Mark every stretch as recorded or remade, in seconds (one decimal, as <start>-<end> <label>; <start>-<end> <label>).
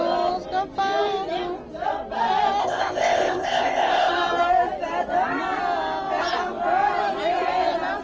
0.0-2.6 recorded; 2.6-4.1 remade; 4.1-8.0 recorded